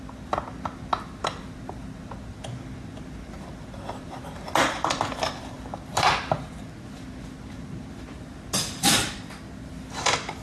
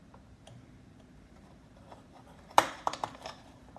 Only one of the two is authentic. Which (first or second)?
first